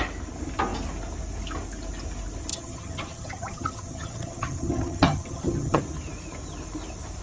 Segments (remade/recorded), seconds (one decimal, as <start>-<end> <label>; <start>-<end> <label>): 0.0-2.5 recorded; 2.5-5.8 remade; 5.8-7.2 recorded